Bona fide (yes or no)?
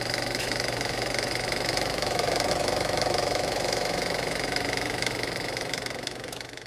no